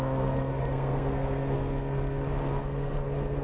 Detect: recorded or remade remade